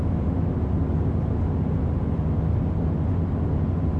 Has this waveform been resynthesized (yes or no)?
no